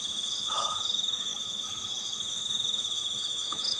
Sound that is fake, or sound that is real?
fake